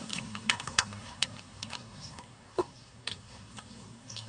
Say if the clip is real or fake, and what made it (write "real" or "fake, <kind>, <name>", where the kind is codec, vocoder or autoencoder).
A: fake, codec, SNAC